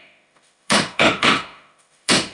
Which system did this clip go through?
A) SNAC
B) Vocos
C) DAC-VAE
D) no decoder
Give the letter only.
C